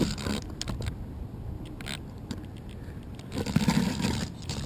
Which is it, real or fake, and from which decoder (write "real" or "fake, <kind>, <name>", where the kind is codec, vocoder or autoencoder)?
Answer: real